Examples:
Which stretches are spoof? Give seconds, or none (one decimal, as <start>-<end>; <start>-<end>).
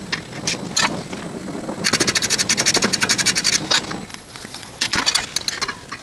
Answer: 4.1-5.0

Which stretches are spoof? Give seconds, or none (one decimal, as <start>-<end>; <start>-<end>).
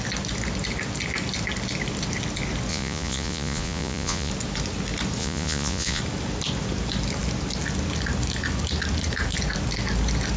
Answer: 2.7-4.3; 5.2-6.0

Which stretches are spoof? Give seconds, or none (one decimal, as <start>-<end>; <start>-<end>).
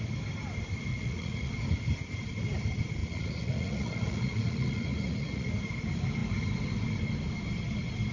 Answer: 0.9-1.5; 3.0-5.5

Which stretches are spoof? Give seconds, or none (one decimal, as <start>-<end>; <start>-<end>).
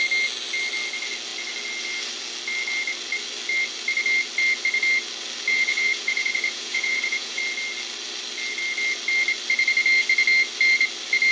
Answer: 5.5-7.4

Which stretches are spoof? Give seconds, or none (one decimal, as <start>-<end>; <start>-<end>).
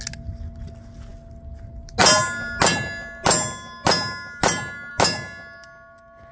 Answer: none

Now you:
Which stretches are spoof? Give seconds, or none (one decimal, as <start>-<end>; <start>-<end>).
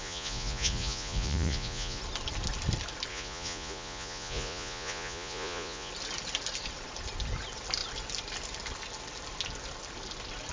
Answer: 0.0-2.0; 3.1-5.9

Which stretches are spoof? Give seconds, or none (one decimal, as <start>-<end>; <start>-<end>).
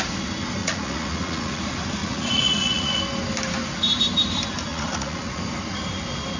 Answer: 0.6-1.6; 2.0-3.0; 4.7-5.4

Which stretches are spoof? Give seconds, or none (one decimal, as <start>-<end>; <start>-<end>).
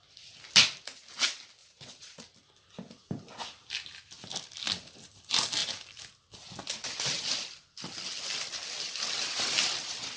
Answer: 1.6-2.2